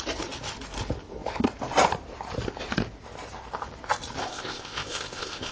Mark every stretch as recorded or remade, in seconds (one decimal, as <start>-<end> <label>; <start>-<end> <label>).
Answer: 0.0-4.2 recorded; 4.2-5.5 remade